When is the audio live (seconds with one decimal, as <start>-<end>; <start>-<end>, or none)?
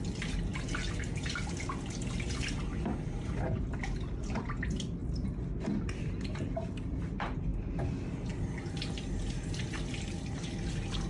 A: 0.0-11.1